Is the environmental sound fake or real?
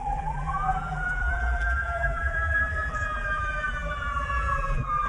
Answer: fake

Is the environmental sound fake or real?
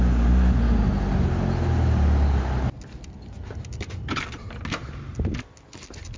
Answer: real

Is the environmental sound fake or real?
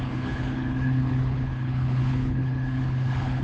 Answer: fake